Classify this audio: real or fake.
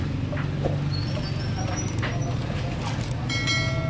real